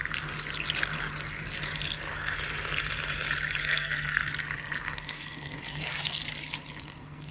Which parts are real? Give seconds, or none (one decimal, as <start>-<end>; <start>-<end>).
0.0-3.6; 4.2-4.8; 6.2-6.8